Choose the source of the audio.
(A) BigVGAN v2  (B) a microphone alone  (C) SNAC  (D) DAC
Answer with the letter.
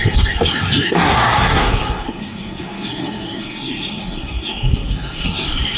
C